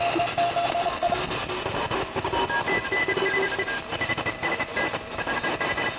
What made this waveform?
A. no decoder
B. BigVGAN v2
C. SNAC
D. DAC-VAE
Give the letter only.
B